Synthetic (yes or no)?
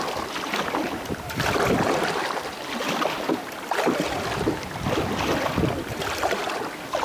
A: yes